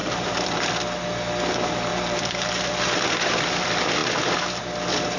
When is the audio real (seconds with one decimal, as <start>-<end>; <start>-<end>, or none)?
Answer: 0.7-1.9; 2.7-5.2